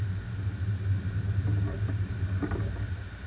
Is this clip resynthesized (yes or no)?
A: no